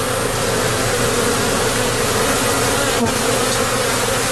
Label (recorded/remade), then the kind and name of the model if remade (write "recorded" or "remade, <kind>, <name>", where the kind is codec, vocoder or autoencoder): recorded